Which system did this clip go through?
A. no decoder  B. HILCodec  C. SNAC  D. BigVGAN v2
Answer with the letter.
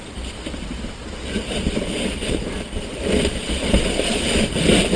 A